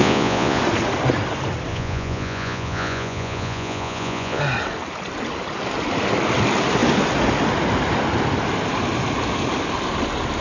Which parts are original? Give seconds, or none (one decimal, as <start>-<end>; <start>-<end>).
0.6-1.7; 4.4-10.4